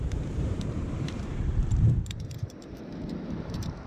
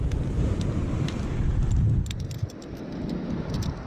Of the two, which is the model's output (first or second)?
first